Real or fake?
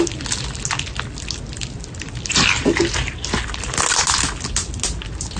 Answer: real